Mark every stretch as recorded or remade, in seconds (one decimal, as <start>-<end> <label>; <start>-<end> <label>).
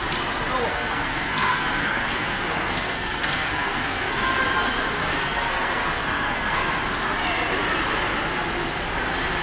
0.0-0.7 recorded; 0.7-4.4 remade; 4.4-5.2 recorded; 5.2-6.7 remade; 6.7-9.4 recorded